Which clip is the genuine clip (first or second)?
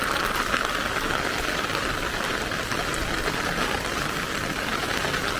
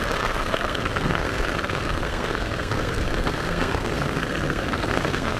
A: first